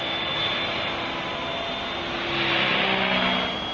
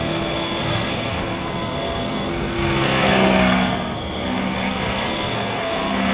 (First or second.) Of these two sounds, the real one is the first